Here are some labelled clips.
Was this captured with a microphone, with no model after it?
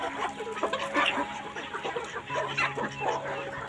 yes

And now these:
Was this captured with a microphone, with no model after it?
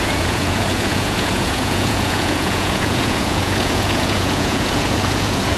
no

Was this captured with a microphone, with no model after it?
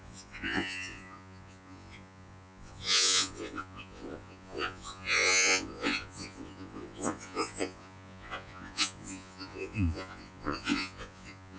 no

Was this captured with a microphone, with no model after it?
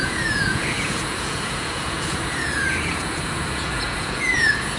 no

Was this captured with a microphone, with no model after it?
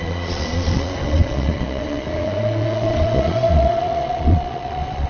no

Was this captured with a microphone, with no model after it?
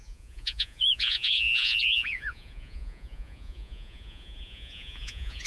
no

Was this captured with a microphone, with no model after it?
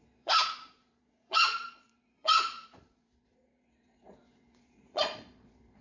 no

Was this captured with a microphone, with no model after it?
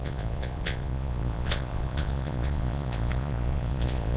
no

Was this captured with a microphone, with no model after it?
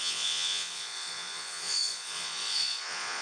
no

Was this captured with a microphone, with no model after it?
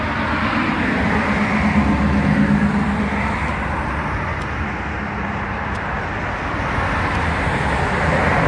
yes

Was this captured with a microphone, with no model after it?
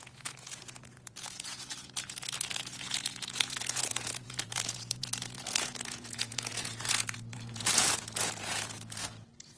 no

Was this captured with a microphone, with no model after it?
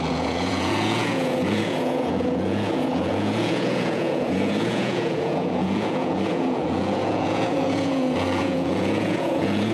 no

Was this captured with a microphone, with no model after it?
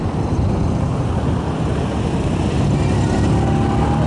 yes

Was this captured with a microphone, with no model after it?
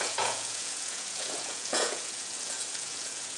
no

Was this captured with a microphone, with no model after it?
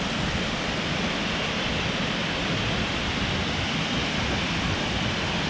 yes